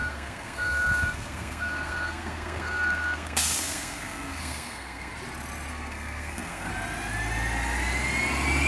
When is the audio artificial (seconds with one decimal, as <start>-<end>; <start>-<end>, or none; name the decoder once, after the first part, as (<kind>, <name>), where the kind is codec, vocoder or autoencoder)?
0.0-5.1 (codec, SNAC); 5.7-6.7